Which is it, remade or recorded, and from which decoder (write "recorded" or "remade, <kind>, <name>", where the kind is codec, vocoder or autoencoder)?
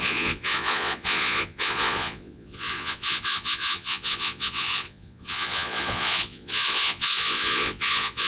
remade, vocoder, Vocos